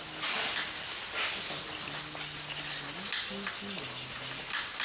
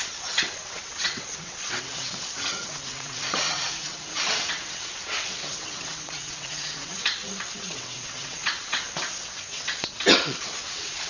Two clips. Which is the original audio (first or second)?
first